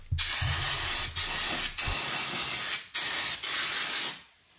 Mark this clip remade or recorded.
recorded